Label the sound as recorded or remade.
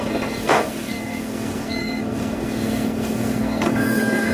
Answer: remade